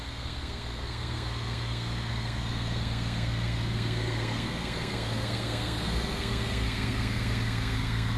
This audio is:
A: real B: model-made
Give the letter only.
B